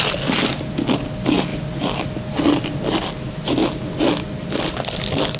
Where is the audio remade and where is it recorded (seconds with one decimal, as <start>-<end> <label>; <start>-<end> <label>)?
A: 0.0-5.4 recorded